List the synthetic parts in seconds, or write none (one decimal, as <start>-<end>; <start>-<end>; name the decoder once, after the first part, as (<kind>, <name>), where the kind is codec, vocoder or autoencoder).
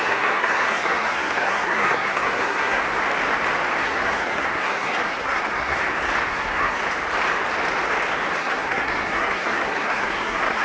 0.0-2.8 (codec, SNAC); 3.8-5.8; 6.3-6.8; 8.4-10.6